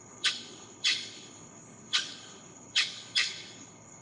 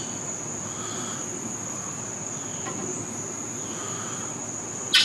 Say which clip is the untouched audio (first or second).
second